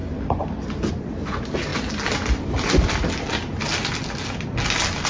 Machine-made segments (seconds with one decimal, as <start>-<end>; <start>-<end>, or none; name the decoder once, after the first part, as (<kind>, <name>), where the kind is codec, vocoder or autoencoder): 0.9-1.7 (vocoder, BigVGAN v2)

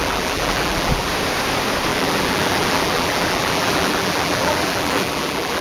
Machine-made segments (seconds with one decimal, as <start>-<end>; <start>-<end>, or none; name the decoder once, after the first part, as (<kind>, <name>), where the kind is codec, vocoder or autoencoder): 0.0-1.1 (vocoder, BigVGAN v2); 1.9-5.6

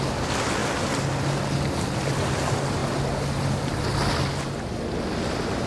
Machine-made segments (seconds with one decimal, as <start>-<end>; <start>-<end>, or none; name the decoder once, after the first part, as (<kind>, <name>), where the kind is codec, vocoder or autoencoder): none

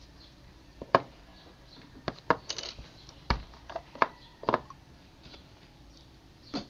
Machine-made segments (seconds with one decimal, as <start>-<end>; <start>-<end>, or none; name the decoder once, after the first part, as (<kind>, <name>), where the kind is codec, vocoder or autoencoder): 0.0-6.7 (vocoder, BigVGAN v2)

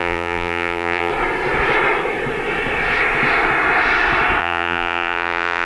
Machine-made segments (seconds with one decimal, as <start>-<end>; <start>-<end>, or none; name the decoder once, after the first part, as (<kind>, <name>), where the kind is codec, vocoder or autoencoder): 0.0-1.1 (vocoder, BigVGAN v2); 4.4-5.7